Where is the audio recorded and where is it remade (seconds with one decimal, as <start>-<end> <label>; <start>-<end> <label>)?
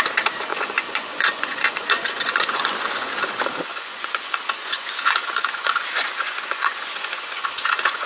0.0-0.5 recorded; 0.5-3.2 remade; 3.2-3.7 recorded; 3.7-8.1 remade